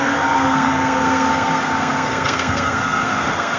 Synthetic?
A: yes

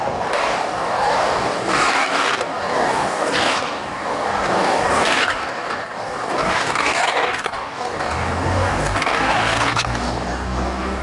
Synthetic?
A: yes